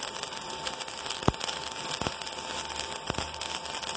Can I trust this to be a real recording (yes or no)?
yes